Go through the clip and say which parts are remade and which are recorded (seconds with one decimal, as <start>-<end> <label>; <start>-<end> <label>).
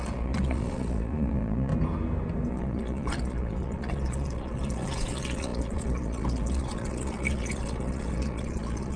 0.0-1.7 remade; 1.7-2.5 recorded; 2.5-9.0 remade